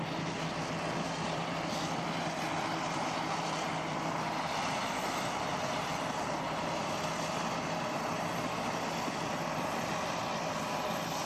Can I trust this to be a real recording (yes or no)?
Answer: yes